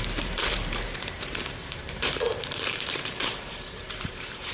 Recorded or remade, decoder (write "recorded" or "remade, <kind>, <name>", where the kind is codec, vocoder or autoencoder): remade, vocoder, BigVGAN v2